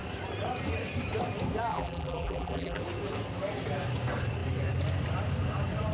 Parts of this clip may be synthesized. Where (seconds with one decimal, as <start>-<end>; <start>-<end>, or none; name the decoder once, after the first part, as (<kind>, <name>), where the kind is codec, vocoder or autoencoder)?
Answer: 1.7-2.8 (vocoder, BigVGAN v2)